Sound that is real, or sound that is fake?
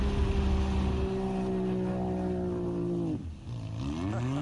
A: real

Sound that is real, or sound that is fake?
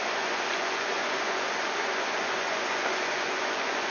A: fake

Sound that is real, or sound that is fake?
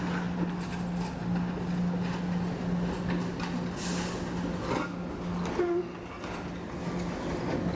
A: real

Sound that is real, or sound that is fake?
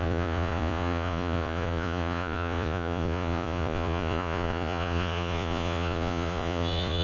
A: fake